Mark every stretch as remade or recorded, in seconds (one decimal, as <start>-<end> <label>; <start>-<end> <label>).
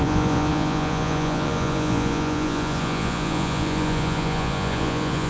0.0-5.3 remade